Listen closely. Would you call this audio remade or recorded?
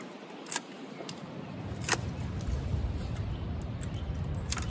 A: recorded